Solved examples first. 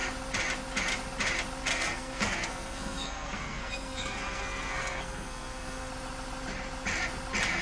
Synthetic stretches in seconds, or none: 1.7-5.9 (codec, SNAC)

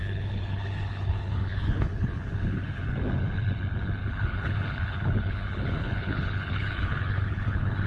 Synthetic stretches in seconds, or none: 0.0-2.8 (codec, HILCodec); 4.0-7.9

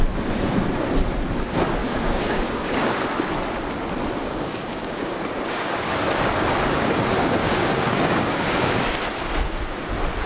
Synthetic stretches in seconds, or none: 1.8-3.1 (codec, DAC); 4.2-5.2; 7.4-8.7

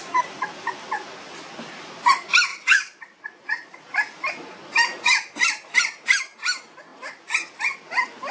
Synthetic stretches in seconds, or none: 2.5-3.8 (vocoder, Vocos)